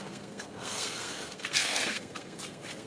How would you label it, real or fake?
fake